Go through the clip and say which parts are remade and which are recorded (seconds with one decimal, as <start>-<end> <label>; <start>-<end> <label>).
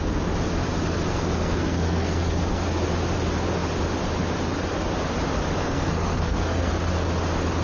0.0-1.1 recorded; 1.1-2.6 remade; 2.6-5.6 recorded; 5.6-6.7 remade; 6.7-7.6 recorded